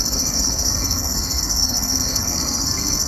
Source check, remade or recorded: remade